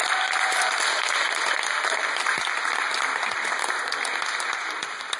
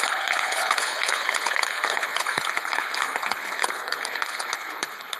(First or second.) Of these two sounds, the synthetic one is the second